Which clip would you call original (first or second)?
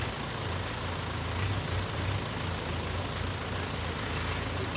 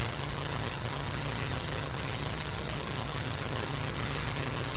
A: first